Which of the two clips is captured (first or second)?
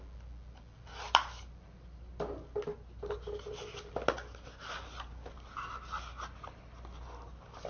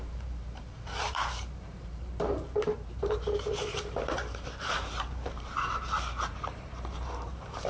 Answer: first